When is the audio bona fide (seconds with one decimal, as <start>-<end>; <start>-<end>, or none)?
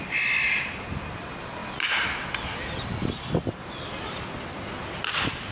0.0-5.5